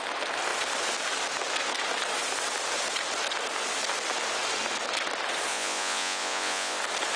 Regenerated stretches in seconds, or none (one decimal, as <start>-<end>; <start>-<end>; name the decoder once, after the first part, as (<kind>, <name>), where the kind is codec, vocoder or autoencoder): 5.5-6.8 (vocoder, Vocos)